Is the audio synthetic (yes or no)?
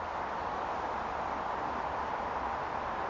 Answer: no